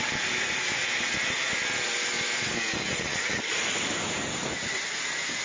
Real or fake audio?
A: fake